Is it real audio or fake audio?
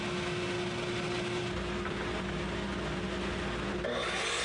real